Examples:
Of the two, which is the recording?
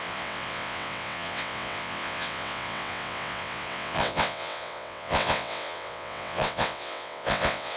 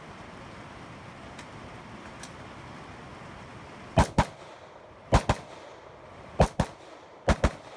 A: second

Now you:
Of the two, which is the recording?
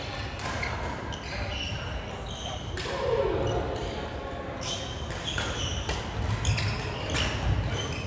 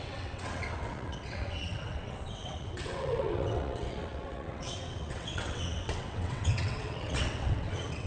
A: first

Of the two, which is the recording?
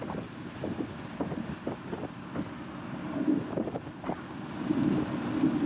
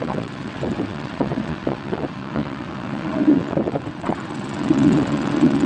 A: first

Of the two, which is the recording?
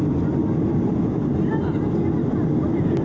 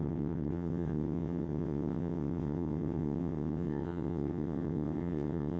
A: first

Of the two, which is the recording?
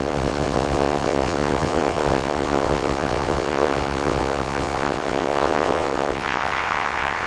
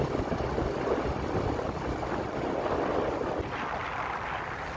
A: second